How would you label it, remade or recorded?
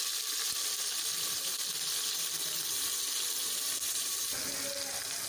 recorded